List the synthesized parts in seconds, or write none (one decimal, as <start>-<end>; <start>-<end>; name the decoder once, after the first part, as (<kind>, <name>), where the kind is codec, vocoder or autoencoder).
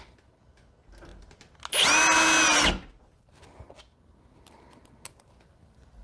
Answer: none